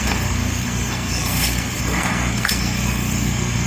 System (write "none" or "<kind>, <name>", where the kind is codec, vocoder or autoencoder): codec, SNAC